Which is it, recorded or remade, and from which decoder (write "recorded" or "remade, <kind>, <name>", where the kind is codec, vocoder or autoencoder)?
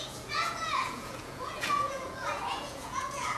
remade, vocoder, Vocos